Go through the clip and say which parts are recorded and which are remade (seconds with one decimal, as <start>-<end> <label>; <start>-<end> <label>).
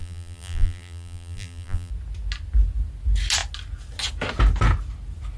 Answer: 0.0-1.9 remade; 1.9-5.4 recorded